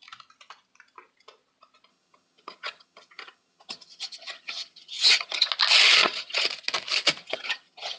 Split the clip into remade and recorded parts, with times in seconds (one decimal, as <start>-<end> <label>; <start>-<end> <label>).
0.0-1.9 recorded; 1.9-5.5 remade; 5.5-6.0 recorded; 6.0-6.5 remade; 6.5-7.2 recorded; 7.2-8.0 remade